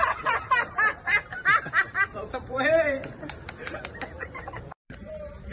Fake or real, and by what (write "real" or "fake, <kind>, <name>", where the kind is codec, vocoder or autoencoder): fake, vocoder, BigVGAN v2